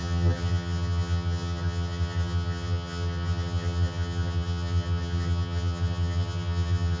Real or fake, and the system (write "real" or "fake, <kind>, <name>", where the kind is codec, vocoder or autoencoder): fake, vocoder, HiFi-GAN